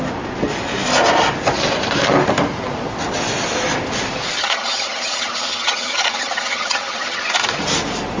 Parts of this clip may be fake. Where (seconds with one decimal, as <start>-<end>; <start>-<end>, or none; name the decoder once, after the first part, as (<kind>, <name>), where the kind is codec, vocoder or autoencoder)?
4.4-7.2 (vocoder, HiFi-GAN)